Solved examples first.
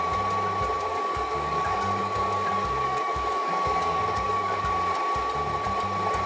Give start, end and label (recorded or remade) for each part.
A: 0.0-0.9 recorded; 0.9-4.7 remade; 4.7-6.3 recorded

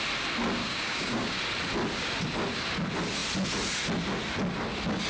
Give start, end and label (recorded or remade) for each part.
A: 0.0-0.6 recorded; 0.6-1.4 remade; 1.4-5.1 recorded

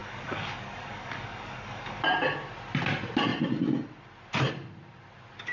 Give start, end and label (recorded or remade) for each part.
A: 0.0-2.0 remade; 2.0-5.5 recorded

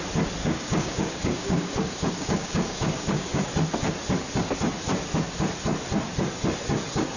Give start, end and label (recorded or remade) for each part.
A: 0.0-0.4 recorded; 0.4-3.5 remade; 3.5-7.2 recorded

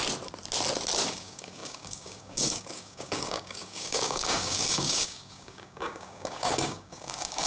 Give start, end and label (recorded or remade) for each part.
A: 0.0-1.1 recorded; 1.1-7.5 remade